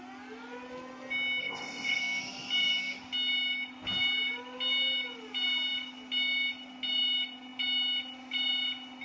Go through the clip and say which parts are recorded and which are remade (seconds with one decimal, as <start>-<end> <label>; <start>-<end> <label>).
0.0-1.4 recorded; 1.4-2.0 remade; 2.0-9.0 recorded